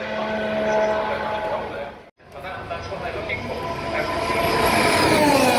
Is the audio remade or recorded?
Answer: recorded